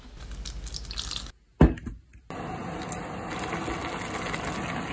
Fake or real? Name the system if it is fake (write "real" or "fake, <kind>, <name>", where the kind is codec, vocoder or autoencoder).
real